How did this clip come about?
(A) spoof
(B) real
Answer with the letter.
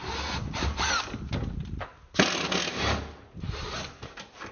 B